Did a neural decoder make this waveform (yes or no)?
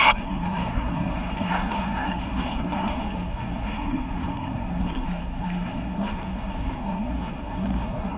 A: yes